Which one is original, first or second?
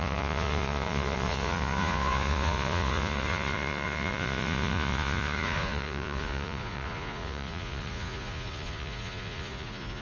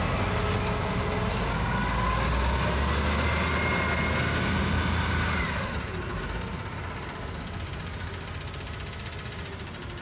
second